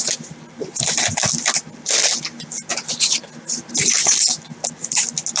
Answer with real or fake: real